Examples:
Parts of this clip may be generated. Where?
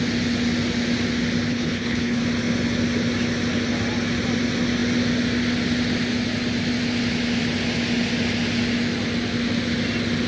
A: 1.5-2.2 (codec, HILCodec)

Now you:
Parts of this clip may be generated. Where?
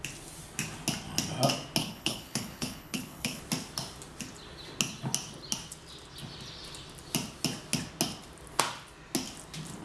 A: 1.8-3.4 (codec, HILCodec)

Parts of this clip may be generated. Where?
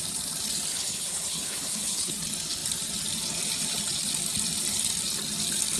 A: 0.7-2.1 (codec, HILCodec)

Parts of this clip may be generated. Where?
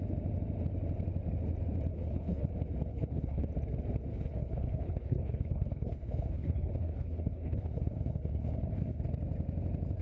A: 1.9-2.5 (codec, HILCodec); 2.9-3.5; 4.1-9.0